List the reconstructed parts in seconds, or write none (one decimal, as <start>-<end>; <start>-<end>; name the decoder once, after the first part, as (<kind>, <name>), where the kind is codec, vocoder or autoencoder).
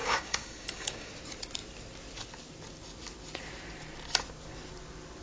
0.0-1.1 (codec, DAC)